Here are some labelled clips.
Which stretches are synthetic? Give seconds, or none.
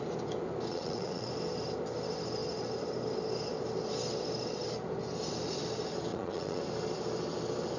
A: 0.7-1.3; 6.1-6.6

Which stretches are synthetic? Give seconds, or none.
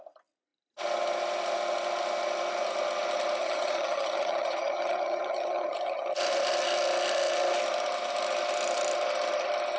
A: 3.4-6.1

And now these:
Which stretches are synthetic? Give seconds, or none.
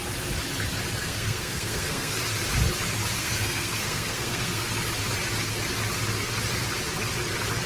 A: 1.0-2.2; 3.2-4.7